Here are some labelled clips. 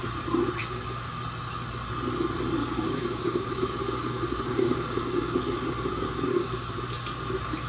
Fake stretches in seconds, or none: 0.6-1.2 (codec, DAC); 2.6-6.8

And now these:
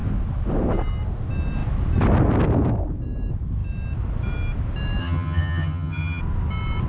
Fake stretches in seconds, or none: 5.0-6.2 (vocoder, HiFi-GAN)

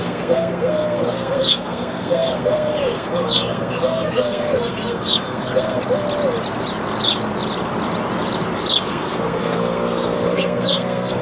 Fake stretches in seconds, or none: 0.0-5.8 (codec, SNAC); 8.9-11.2